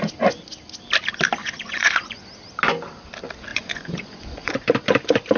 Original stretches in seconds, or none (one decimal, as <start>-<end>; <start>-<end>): 0.0-1.4; 2.2-3.5; 4.5-5.4